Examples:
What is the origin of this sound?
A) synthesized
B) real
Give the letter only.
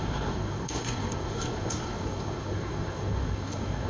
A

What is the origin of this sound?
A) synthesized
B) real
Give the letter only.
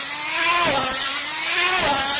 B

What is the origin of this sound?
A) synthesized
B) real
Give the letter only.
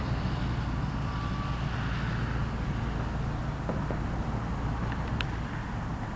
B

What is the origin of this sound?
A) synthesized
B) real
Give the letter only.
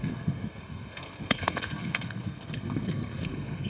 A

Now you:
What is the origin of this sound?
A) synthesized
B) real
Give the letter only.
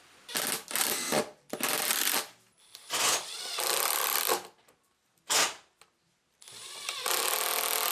B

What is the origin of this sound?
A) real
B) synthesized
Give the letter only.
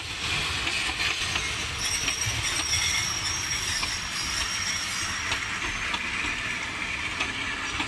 A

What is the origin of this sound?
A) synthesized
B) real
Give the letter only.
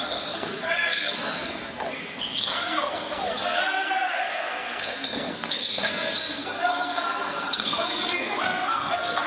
A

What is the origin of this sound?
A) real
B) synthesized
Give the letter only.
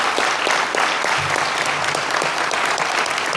A